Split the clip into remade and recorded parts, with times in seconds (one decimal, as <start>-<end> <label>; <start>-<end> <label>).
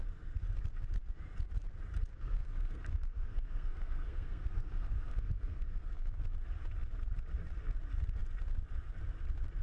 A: 0.0-2.1 recorded; 2.1-6.2 remade; 6.2-9.6 recorded